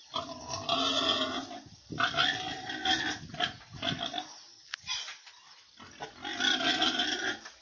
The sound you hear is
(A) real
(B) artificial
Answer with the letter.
A